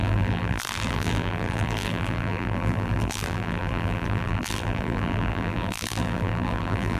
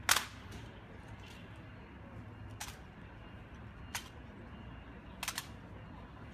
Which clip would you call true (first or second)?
second